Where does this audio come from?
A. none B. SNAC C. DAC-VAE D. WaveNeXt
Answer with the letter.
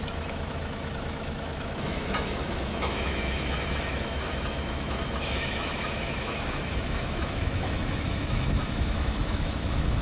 C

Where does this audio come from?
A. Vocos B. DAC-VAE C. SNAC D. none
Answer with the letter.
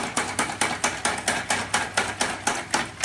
D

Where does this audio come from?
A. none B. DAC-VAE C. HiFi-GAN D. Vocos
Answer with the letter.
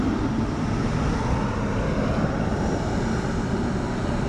A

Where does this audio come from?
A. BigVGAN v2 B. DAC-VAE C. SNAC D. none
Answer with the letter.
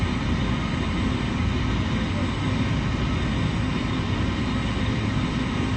D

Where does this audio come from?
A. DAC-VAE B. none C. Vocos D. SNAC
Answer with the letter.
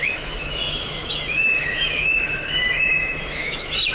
A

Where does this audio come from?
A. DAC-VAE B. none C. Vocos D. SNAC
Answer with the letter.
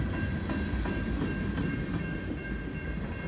B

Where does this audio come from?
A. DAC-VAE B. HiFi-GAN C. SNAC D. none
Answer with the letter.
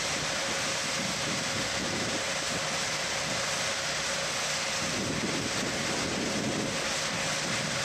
D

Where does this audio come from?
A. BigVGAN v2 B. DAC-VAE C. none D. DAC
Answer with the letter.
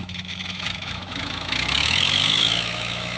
B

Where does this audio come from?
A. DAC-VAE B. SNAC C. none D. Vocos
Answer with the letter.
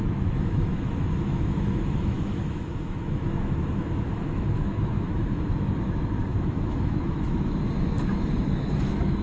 A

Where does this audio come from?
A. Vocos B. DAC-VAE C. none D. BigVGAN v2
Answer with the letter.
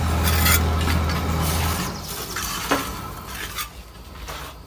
C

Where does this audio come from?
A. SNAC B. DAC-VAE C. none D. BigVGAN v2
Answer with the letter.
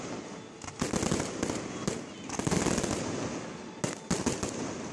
C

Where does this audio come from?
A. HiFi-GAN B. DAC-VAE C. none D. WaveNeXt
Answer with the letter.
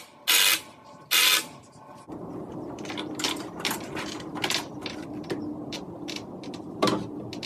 C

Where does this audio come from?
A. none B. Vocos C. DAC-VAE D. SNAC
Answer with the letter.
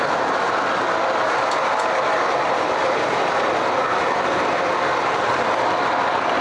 A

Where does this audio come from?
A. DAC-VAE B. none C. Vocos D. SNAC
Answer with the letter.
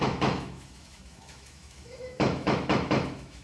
A